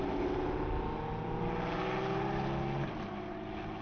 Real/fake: real